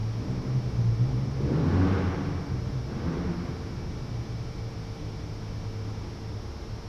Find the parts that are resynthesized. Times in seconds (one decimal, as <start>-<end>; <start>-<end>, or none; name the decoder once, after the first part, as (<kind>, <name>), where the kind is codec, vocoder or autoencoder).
none